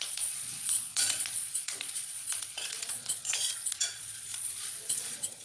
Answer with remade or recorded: remade